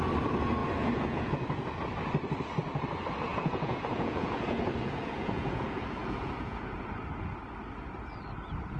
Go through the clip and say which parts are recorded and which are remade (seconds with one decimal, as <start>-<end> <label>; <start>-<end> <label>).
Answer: 0.0-0.6 recorded; 0.6-1.7 remade; 1.7-3.3 recorded; 3.3-6.9 remade; 6.9-8.8 recorded